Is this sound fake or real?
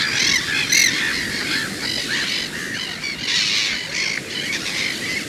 real